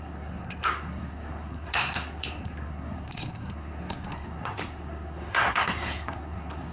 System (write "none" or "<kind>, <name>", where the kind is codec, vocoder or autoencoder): codec, SNAC